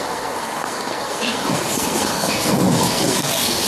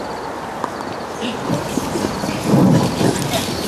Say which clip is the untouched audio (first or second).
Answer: second